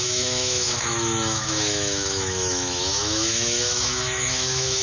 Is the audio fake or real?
fake